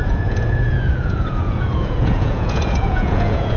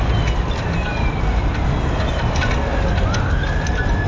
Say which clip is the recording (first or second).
second